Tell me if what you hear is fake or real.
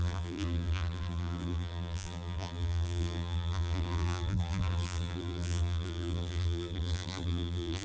fake